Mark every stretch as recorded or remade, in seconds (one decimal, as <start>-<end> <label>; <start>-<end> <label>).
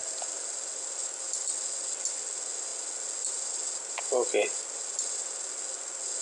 0.0-6.2 recorded